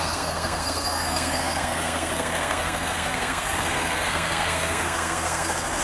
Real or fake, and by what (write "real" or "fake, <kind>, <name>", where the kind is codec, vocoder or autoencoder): fake, codec, SNAC